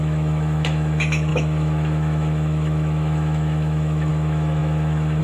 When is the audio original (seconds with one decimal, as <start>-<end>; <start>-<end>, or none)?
none